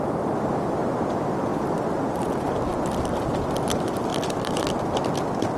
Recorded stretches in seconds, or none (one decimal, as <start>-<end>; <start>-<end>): 0.0-4.1; 4.6-5.6